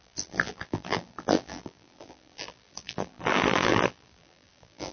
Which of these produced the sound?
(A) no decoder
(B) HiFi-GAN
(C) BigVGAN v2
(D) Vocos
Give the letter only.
C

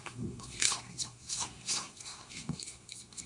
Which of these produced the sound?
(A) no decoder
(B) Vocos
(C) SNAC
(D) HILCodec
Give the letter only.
C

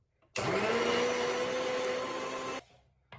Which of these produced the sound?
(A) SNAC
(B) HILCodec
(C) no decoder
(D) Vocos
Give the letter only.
C